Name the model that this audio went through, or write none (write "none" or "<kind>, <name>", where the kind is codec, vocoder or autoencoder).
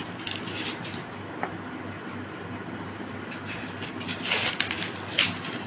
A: none